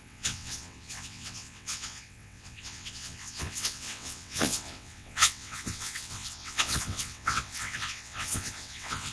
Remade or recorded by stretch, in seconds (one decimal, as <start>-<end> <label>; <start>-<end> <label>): 0.0-9.1 remade

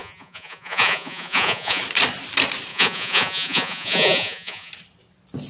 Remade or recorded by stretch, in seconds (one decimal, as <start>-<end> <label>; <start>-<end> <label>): 0.0-1.8 remade; 1.8-2.7 recorded; 2.7-4.7 remade; 4.7-5.5 recorded